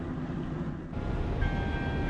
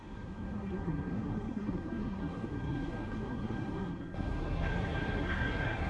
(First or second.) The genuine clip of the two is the first